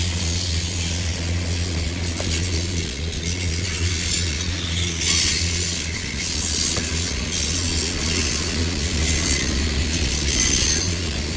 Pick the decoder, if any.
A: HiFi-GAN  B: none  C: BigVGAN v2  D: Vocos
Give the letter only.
D